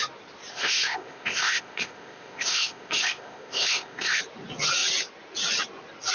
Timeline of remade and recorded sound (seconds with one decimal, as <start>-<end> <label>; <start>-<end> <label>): 0.0-0.5 recorded; 0.5-4.2 remade; 4.2-6.1 recorded